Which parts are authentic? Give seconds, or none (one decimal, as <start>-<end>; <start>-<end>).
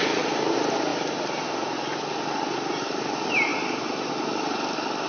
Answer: 0.0-5.1